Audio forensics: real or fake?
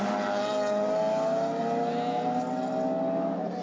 real